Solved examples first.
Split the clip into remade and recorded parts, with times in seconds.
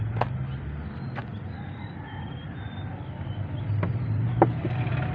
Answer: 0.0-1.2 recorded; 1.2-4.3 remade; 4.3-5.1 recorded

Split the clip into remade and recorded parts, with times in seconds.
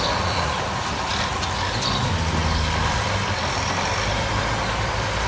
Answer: 0.0-1.1 remade; 1.1-2.3 recorded; 2.3-5.3 remade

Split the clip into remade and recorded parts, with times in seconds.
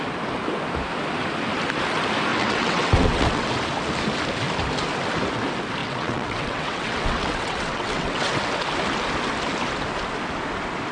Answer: 0.0-2.3 recorded; 2.3-3.5 remade; 3.5-5.8 recorded; 5.8-8.3 remade; 8.3-10.9 recorded